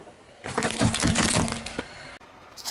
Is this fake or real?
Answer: real